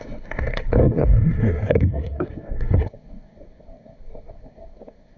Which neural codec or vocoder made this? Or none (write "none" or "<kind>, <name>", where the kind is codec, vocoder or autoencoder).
codec, SNAC